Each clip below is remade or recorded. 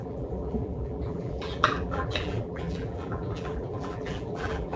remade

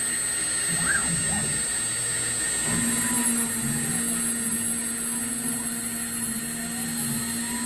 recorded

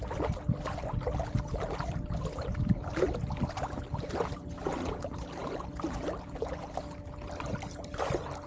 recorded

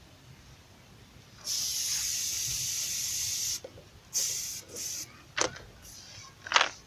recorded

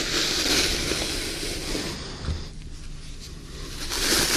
recorded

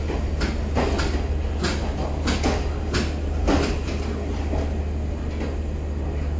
recorded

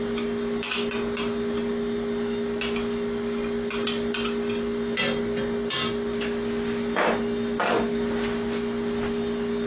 recorded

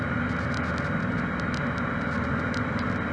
recorded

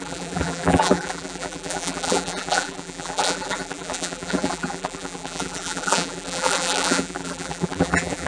remade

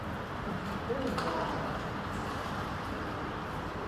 remade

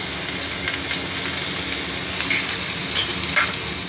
recorded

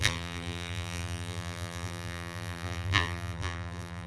remade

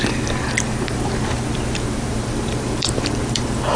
remade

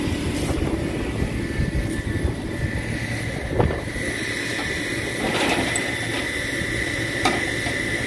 recorded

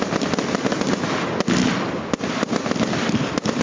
recorded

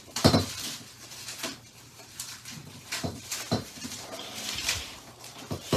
remade